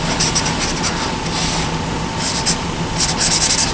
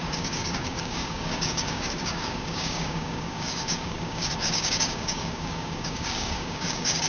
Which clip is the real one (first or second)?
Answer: first